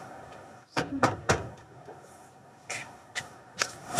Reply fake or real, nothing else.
fake